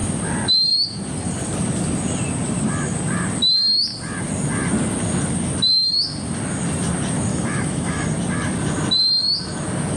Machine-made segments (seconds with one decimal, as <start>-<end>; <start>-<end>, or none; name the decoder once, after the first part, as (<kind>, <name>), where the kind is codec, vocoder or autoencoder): 7.3-8.1 (autoencoder, DAC-VAE)